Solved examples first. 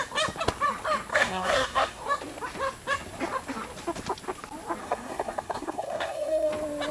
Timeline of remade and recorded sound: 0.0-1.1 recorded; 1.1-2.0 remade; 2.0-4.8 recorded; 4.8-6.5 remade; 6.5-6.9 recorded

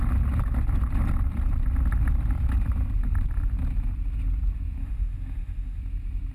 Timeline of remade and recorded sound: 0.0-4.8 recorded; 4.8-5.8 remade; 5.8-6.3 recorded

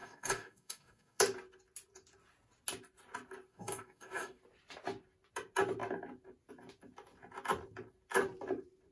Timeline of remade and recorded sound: 0.0-1.2 remade; 1.2-3.5 recorded; 3.5-4.4 remade; 4.4-8.9 recorded